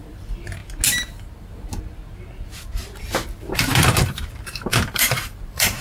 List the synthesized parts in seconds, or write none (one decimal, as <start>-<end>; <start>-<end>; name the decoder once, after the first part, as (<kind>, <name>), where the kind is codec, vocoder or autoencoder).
0.0-0.6 (vocoder, BigVGAN v2); 3.4-5.8